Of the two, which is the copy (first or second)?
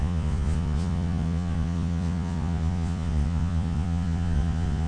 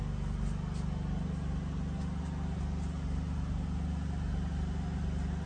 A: first